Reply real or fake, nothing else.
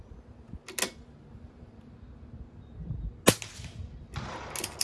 real